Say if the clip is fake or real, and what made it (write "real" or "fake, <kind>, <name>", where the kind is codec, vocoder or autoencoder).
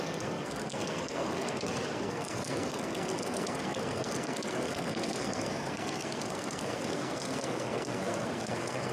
fake, codec, SNAC